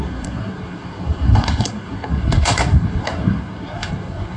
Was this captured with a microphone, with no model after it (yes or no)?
no